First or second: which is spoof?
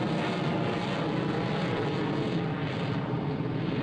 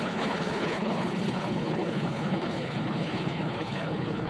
second